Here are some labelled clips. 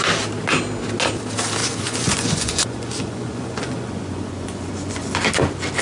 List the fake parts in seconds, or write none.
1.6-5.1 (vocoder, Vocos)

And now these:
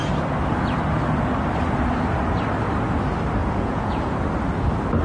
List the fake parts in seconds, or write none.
3.4-4.0 (vocoder, Vocos)

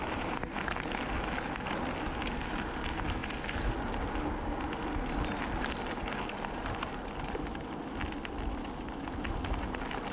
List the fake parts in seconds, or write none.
none

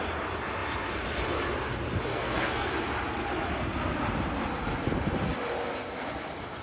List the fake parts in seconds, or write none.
2.1-2.7 (codec, SNAC)

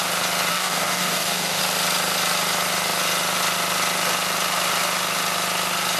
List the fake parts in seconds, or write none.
0.5-1.6 (codec, DAC)

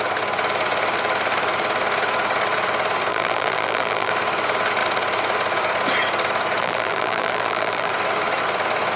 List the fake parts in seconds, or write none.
3.1-4.1 (vocoder, BigVGAN v2); 6.6-7.9

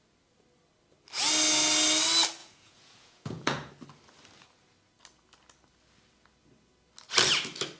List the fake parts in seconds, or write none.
2.4-3.7 (vocoder, Vocos)